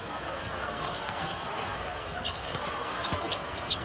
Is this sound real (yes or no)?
no